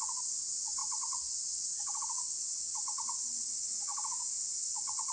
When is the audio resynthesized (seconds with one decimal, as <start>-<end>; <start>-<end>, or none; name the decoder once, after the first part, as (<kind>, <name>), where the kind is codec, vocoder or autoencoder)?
0.0-3.9 (vocoder, Vocos); 4.6-5.1